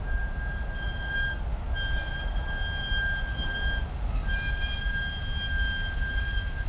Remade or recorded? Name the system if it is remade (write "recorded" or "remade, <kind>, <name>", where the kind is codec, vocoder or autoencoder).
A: recorded